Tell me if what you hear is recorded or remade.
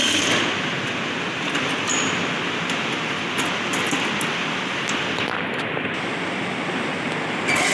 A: recorded